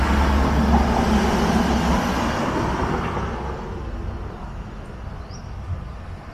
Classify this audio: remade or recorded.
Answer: recorded